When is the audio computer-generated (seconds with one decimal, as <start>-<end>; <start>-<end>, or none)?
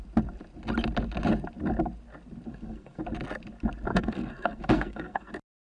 2.5-3.0; 3.9-5.3